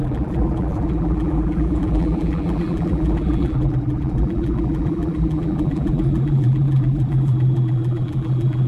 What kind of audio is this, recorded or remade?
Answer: remade